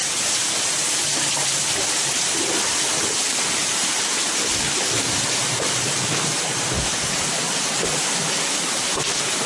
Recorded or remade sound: recorded